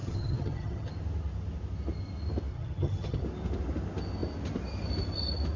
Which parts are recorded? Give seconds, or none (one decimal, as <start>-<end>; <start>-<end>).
0.9-2.5; 3.2-5.6